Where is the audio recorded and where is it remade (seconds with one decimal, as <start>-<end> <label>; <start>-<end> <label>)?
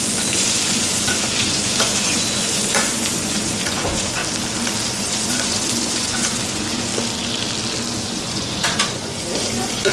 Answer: 0.0-4.2 remade; 4.2-4.9 recorded; 4.9-6.9 remade; 6.9-8.0 recorded; 8.0-9.9 remade